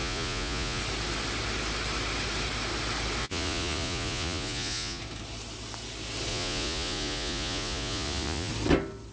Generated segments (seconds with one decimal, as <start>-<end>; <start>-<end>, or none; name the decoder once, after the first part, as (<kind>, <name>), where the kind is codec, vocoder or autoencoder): 0.0-0.8 (vocoder, Vocos); 3.2-5.0; 6.3-8.5